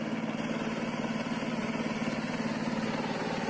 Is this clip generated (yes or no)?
no